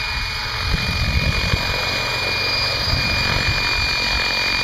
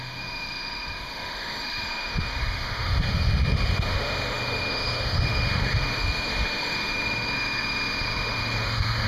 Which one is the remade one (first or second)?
second